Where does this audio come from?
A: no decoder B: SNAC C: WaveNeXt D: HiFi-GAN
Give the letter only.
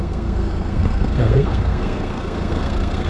B